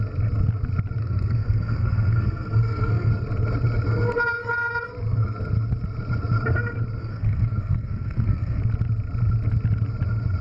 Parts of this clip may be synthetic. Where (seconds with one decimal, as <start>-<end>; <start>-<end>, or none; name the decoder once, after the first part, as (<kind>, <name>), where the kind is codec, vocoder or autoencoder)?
1.0-3.1 (codec, SNAC); 7.0-8.6